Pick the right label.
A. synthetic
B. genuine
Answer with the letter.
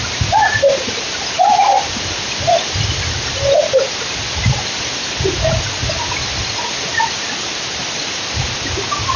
B